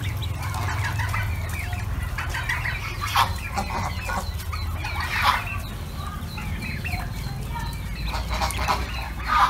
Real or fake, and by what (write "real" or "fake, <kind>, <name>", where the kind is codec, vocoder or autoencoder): real